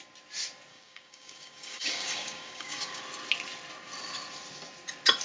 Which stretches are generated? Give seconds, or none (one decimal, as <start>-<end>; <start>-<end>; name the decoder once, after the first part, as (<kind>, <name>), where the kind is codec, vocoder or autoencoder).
0.7-3.0 (codec, DAC)